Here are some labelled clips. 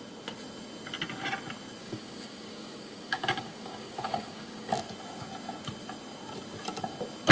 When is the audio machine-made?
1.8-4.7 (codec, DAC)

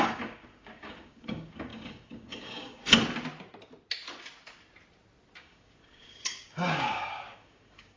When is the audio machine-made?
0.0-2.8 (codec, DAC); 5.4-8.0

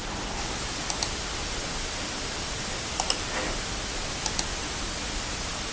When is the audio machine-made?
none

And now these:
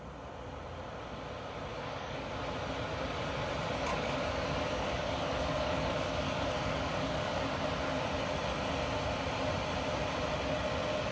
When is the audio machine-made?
1.7-2.3 (codec, DAC); 3.9-7.4

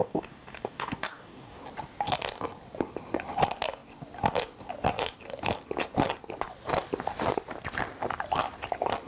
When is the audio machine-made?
0.0-1.6 (codec, DAC)

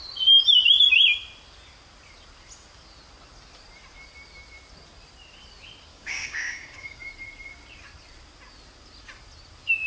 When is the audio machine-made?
5.9-7.1 (codec, DAC)

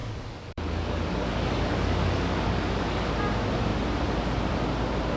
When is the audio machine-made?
0.0-3.1 (codec, DAC)

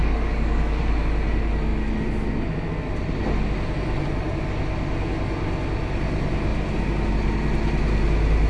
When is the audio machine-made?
0.0-0.8 (codec, DAC)